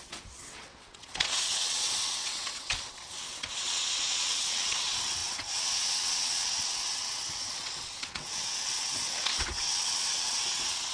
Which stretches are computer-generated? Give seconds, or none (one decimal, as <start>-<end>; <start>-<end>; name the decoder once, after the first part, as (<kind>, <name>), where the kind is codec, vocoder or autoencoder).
0.0-10.9 (vocoder, WaveNeXt)